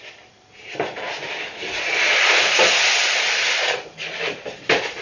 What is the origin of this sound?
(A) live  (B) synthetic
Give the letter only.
A